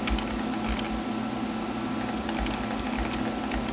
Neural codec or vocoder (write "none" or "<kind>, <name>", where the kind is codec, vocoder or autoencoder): none